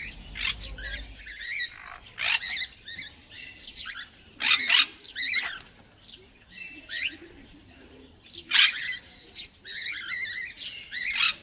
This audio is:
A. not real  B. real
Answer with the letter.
B